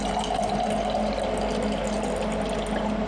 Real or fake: real